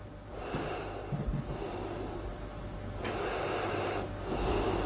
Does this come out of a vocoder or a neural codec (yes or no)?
no